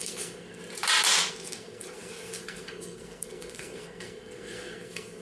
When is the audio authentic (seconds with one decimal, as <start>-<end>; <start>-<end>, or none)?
0.6-1.3